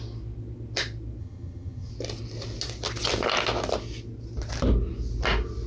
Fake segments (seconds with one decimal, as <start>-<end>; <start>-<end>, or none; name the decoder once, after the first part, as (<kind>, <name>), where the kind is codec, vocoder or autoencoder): 1.2-1.9 (vocoder, HiFi-GAN)